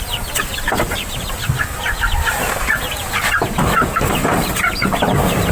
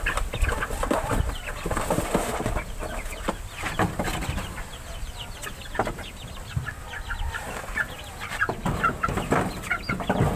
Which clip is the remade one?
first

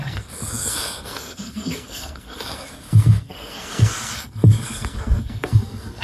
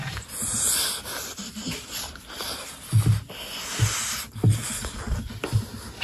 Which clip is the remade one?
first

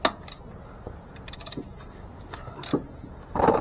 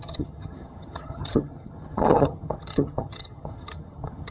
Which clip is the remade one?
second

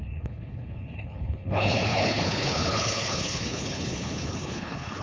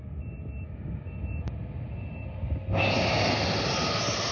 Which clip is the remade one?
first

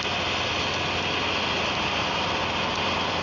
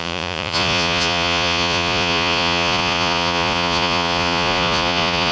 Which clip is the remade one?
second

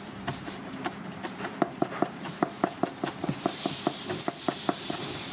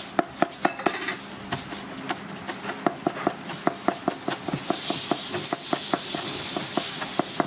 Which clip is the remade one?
first